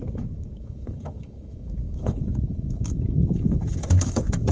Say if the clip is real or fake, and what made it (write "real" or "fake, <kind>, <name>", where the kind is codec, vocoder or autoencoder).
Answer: fake, autoencoder, DAC-VAE